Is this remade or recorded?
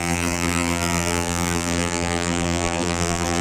remade